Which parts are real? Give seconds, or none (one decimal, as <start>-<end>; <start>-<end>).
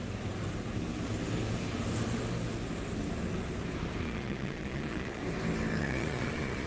0.0-4.0; 5.2-5.8